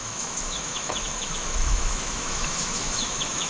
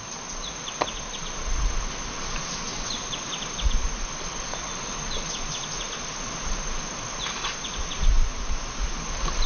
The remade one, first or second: first